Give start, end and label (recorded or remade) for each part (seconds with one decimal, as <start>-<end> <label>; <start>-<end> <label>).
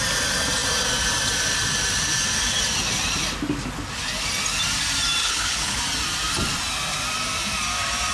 0.0-5.2 recorded; 5.2-5.8 remade; 5.8-8.1 recorded